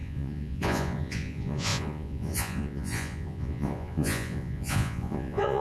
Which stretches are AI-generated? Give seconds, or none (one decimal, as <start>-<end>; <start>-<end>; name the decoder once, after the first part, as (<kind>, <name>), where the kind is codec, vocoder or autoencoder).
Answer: 0.0-5.6 (vocoder, Vocos)